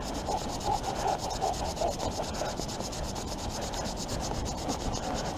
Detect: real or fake real